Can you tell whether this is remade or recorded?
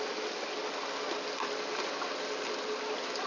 recorded